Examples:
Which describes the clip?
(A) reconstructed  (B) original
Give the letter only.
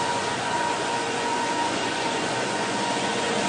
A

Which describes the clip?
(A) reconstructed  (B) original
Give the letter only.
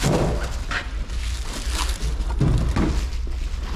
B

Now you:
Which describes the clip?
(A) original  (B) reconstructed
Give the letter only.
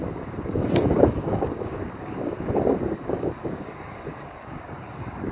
B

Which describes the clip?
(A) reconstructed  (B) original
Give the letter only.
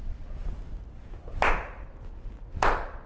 B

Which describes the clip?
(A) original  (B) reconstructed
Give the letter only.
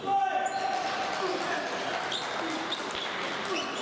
A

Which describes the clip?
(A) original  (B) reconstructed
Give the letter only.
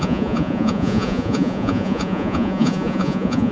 B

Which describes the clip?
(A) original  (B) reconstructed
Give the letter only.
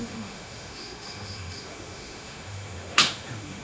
B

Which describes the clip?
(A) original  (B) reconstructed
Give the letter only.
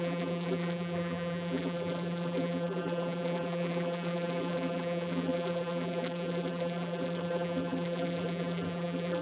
B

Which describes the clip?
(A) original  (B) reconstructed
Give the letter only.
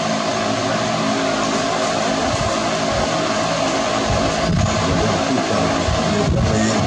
A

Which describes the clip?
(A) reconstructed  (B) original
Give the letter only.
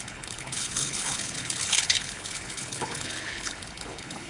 A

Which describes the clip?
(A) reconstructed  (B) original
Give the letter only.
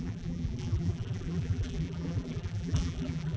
A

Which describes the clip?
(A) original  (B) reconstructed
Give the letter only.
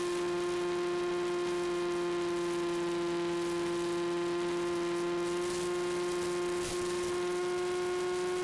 A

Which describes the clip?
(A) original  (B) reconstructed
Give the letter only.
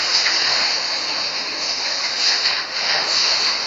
B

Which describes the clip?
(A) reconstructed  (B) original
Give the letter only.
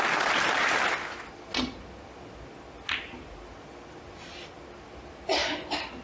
B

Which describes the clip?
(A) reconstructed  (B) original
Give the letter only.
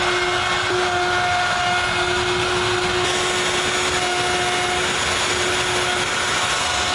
B